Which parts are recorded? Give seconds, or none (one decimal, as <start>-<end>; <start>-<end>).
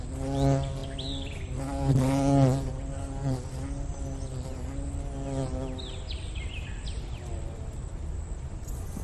0.0-9.0